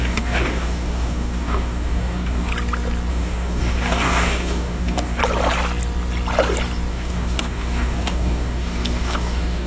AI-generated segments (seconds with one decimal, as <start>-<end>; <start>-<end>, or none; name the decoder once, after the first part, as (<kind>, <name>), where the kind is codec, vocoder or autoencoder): 0.0-2.5 (codec, DAC); 3.1-5.2; 6.9-9.7